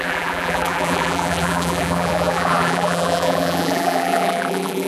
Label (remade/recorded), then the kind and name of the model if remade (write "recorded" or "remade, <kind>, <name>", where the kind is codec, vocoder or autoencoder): remade, vocoder, BigVGAN v2